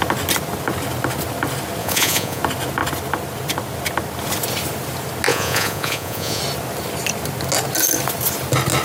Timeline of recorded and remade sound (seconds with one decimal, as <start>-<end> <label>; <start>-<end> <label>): 0.0-1.8 recorded; 1.8-2.4 remade; 2.4-5.3 recorded; 5.3-6.4 remade; 6.4-8.8 recorded